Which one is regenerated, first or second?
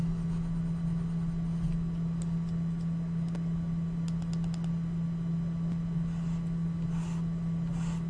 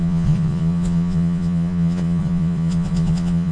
second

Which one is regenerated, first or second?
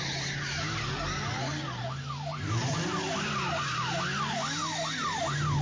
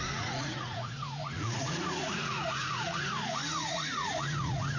second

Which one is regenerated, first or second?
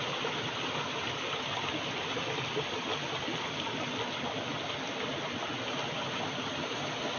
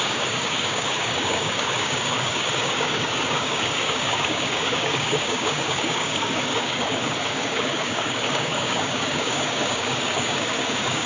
second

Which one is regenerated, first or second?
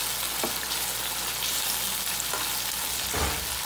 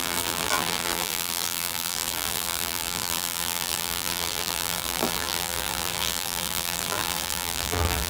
second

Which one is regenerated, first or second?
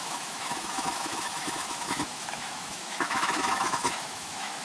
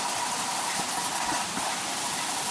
first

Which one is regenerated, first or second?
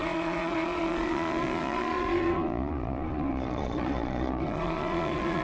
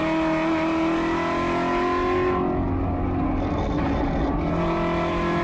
first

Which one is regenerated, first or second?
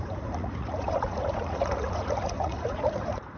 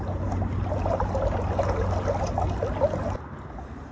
first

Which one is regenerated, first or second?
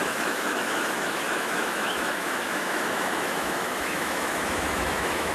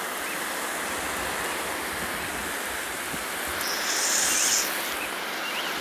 first